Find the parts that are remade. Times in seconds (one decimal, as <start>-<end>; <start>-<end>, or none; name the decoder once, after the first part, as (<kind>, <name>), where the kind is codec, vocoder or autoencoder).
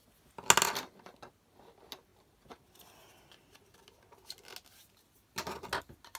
none